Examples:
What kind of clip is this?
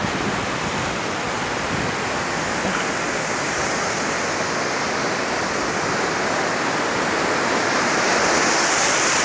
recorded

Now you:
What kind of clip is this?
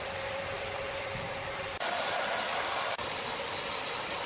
recorded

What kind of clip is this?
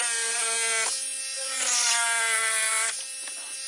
recorded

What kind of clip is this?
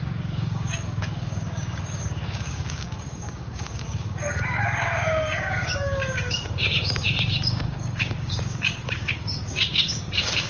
remade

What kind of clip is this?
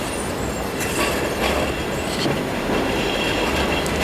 recorded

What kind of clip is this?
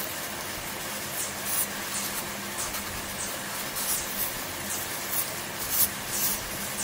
recorded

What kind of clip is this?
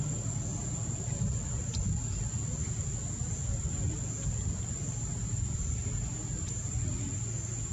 recorded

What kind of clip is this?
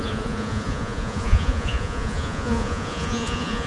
remade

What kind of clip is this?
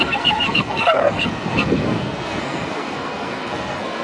remade